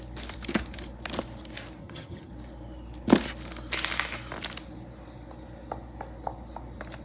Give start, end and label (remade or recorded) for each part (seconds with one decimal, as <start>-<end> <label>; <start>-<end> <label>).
0.0-1.8 recorded; 1.8-2.3 remade; 2.3-7.0 recorded